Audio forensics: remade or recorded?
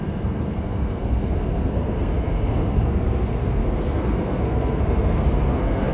remade